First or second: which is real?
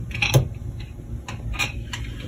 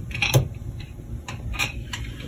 first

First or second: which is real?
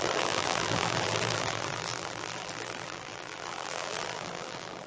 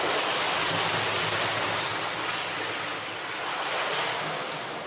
second